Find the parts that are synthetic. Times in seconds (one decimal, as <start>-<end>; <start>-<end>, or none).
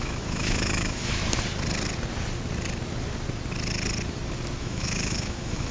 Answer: 0.0-1.2; 4.6-5.7